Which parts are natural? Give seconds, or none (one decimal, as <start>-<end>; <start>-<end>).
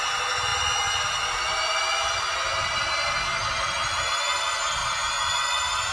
0.0-5.9